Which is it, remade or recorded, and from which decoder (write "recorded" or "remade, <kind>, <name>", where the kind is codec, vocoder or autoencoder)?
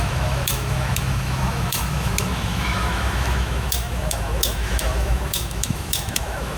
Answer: remade, autoencoder, DAC-VAE